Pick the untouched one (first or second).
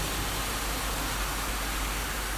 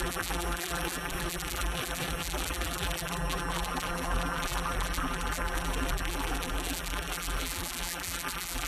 first